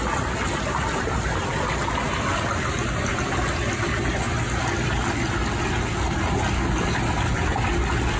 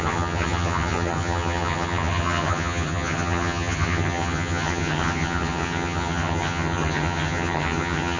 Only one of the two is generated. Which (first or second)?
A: second